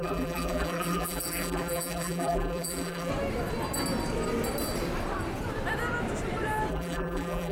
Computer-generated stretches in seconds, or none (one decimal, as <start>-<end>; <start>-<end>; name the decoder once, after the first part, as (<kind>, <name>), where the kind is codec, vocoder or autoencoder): 0.0-3.1 (vocoder, BigVGAN v2); 6.7-7.5